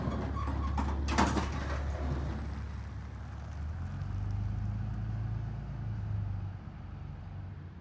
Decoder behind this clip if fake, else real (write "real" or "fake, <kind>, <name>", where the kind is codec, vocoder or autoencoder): real